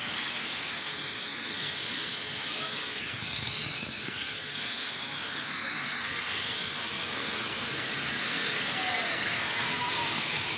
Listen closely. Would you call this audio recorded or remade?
remade